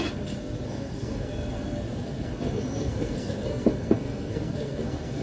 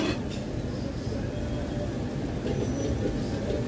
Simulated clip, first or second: first